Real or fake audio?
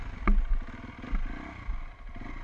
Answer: real